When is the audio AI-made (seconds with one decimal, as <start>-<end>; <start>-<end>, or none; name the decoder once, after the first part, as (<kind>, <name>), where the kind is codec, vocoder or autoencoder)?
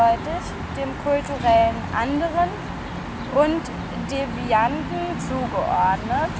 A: none